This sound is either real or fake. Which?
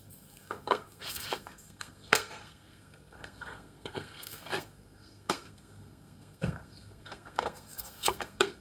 fake